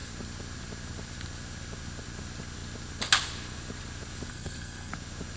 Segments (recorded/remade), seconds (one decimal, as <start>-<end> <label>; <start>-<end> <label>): 0.0-4.3 recorded; 4.3-4.9 remade; 4.9-5.4 recorded